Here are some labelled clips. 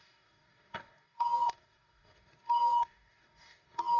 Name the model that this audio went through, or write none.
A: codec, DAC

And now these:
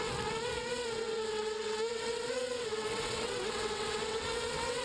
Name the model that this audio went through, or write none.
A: vocoder, WaveNeXt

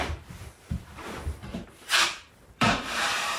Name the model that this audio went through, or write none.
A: vocoder, BigVGAN v2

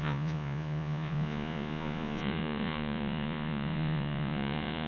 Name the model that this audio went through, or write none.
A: vocoder, Vocos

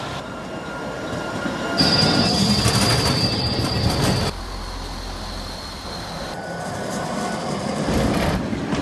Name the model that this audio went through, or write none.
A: vocoder, BigVGAN v2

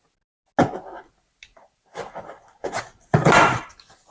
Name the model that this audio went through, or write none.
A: none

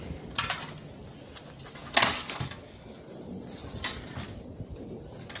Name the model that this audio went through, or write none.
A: none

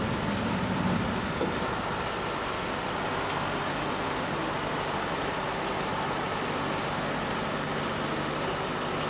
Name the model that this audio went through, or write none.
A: none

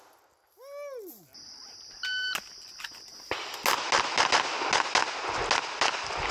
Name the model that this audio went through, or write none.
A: none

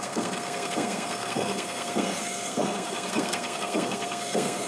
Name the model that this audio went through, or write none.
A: codec, SNAC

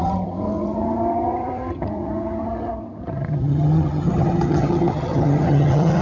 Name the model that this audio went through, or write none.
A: vocoder, HiFi-GAN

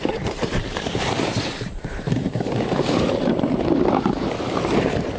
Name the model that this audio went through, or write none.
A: vocoder, BigVGAN v2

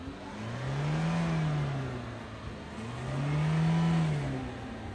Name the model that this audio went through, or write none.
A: none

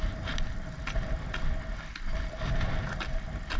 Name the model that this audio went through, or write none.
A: none